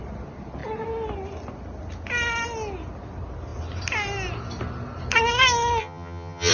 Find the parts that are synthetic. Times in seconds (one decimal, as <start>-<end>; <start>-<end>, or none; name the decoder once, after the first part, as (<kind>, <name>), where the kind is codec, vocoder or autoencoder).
5.8-6.5 (vocoder, HiFi-GAN)